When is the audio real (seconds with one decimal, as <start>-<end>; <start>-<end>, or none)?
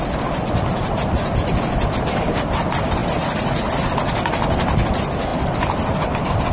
0.0-6.5